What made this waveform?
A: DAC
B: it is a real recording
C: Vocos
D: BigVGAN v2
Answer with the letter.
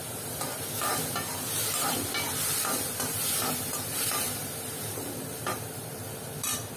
D